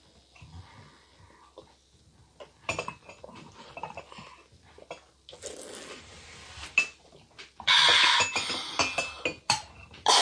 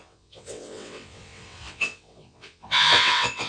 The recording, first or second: first